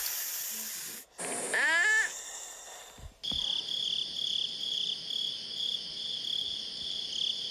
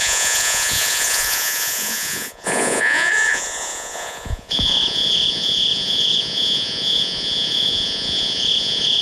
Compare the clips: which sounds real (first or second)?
first